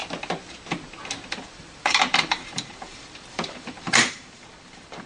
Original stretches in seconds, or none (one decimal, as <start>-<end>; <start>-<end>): 0.0-1.3